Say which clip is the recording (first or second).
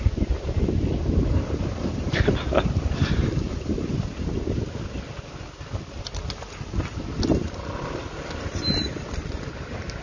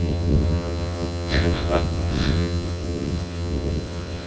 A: first